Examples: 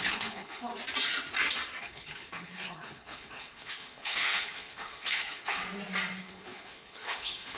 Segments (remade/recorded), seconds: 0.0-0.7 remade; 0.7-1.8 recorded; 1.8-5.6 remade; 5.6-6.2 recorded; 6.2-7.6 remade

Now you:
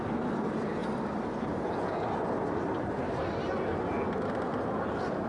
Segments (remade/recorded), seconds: 0.0-5.3 recorded

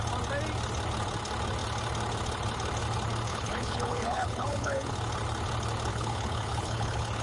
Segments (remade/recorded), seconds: 0.0-3.3 recorded; 3.3-4.9 remade; 4.9-5.9 recorded; 5.9-7.2 remade

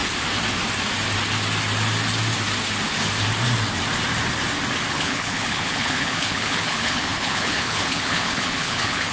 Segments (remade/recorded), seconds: 0.0-4.9 recorded; 4.9-9.1 remade

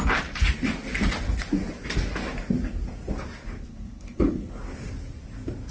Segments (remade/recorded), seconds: 0.0-3.7 recorded; 3.7-4.6 remade; 4.6-5.7 recorded

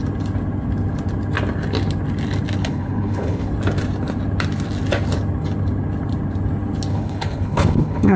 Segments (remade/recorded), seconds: 0.0-2.6 recorded; 2.6-3.5 remade; 3.5-6.9 recorded; 6.9-8.2 remade

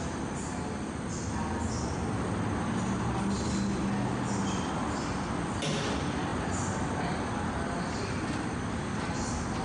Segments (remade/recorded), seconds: 0.0-9.6 recorded

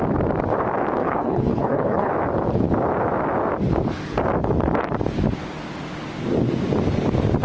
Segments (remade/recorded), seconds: 0.0-1.0 recorded; 1.0-2.1 remade; 2.1-7.4 recorded